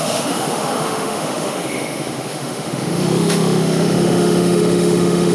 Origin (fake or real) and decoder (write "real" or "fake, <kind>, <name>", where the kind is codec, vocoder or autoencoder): fake, autoencoder, DAC-VAE